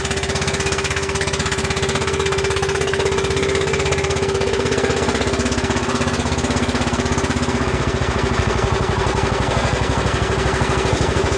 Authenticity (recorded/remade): remade